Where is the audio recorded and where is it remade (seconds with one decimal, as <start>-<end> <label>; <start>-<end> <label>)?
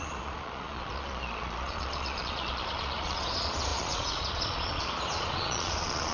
0.0-6.1 remade